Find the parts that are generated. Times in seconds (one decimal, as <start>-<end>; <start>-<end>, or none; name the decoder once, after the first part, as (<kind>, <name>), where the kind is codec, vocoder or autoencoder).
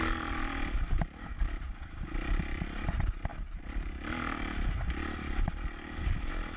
none